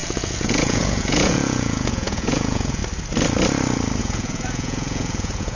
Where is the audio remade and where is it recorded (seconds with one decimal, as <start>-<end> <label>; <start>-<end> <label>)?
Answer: 0.0-2.8 remade; 2.8-4.0 recorded; 4.0-5.5 remade